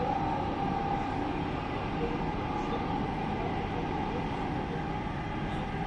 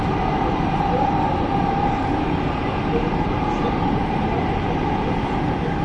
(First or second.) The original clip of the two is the first